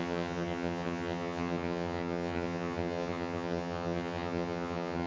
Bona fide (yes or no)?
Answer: no